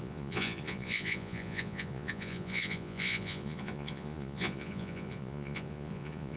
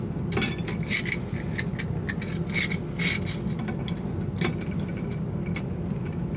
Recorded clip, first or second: second